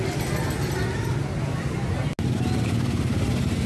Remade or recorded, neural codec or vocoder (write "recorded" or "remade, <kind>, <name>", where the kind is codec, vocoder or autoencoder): recorded